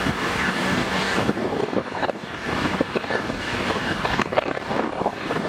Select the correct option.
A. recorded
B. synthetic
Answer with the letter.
B